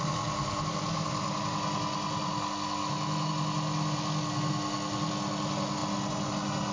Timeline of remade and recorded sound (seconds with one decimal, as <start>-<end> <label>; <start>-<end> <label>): 0.0-2.8 recorded; 2.8-3.3 remade; 3.3-6.7 recorded